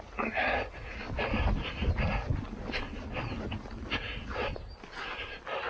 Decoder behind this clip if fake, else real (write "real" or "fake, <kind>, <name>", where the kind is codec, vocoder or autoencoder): real